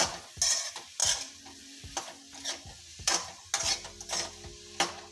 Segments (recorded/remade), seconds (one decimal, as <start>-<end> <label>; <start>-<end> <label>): 0.0-1.0 recorded; 1.0-1.8 remade; 1.8-2.9 recorded; 2.9-3.5 remade; 3.5-5.1 recorded